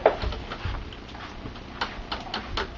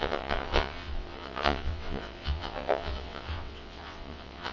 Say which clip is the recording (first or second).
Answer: first